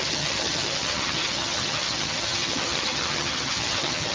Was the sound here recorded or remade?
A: remade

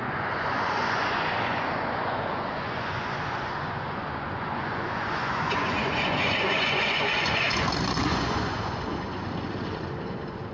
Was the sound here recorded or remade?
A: remade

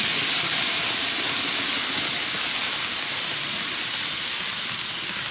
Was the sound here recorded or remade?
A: recorded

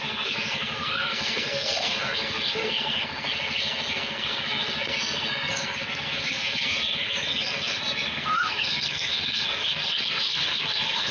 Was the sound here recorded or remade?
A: remade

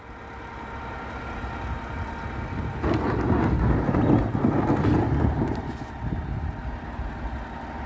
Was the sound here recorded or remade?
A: recorded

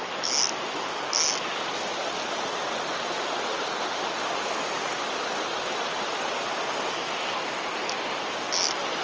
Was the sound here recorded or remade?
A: recorded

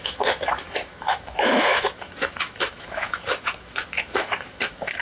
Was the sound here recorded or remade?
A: remade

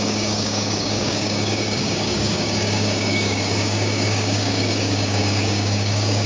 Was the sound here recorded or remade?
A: remade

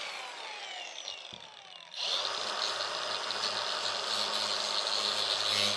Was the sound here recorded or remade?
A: recorded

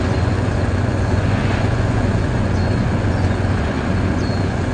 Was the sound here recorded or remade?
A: remade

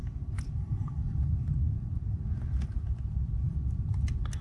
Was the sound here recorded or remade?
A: recorded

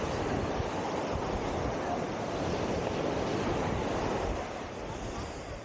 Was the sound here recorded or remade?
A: recorded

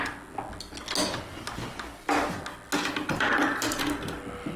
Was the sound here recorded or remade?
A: recorded